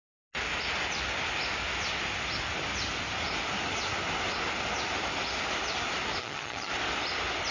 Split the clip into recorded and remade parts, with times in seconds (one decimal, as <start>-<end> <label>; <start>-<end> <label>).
0.0-6.2 recorded; 6.2-6.7 remade; 6.7-7.5 recorded